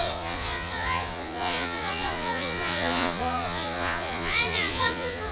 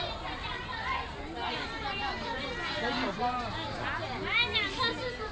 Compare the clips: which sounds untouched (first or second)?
second